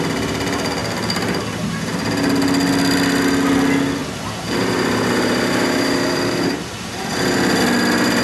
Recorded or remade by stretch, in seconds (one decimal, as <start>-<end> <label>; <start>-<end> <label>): 0.0-4.0 recorded; 4.0-7.6 remade; 7.6-8.2 recorded